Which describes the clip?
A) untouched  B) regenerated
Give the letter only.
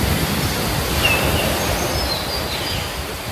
A